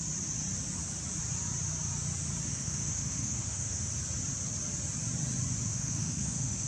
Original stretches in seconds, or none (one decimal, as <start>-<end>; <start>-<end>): 0.0-2.5; 3.9-5.7

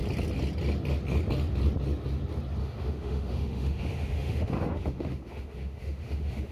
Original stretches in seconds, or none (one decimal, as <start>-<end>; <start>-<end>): 0.0-2.6

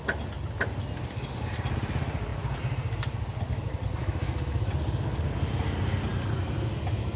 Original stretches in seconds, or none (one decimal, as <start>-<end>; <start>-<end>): 0.0-4.0; 4.7-7.2

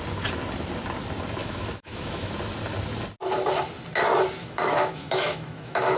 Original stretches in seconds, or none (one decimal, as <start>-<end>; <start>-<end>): 0.0-1.4; 2.3-4.4

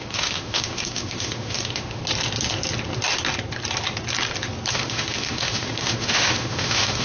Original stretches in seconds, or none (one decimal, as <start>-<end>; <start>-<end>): 2.0-4.7